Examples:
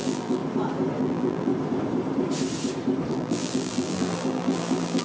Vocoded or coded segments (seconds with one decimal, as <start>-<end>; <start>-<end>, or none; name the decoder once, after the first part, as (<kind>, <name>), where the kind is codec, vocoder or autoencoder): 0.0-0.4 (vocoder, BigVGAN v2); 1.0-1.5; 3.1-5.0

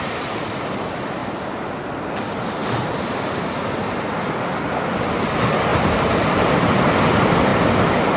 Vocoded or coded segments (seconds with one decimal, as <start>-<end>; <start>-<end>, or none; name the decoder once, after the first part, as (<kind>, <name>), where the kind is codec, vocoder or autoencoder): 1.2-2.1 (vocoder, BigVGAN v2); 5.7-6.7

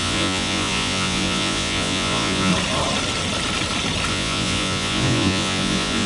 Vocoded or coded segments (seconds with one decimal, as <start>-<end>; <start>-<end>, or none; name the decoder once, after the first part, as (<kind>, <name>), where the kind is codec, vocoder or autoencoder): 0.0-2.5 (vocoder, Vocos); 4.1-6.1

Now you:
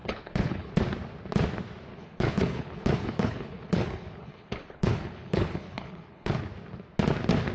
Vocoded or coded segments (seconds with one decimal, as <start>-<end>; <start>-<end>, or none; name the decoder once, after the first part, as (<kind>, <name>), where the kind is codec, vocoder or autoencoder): 0.0-0.7 (codec, HILCodec); 1.9-6.4

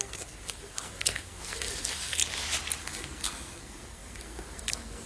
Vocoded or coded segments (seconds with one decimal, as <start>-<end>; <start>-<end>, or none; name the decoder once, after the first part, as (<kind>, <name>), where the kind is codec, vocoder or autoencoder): 0.0-2.2 (codec, SNAC); 2.8-5.1